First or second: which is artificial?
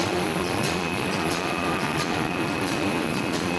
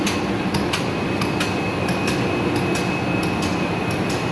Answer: first